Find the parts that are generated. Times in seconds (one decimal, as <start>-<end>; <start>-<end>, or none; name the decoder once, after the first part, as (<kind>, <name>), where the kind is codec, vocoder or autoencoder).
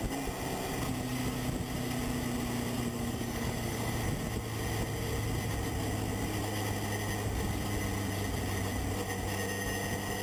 2.9-3.9 (codec, DAC)